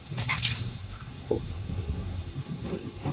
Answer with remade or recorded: remade